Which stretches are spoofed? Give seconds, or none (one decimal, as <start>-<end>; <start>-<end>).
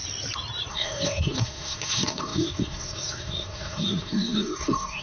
0.7-5.0